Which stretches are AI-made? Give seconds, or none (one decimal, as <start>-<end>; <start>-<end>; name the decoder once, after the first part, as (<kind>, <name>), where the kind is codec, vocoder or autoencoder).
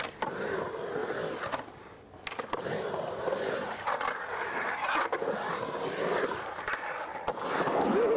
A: none